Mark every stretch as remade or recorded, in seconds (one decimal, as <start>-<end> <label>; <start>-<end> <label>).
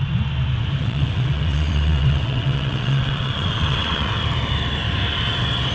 0.0-0.8 recorded; 0.8-4.2 remade; 4.2-5.7 recorded